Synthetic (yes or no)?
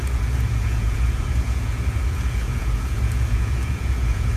yes